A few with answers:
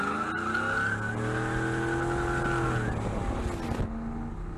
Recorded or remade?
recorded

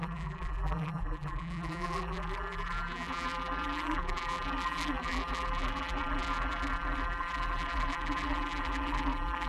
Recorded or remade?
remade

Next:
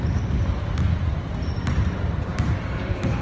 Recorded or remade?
remade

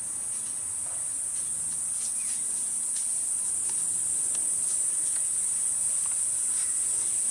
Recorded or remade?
recorded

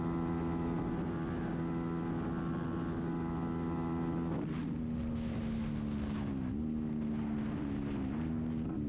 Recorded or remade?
recorded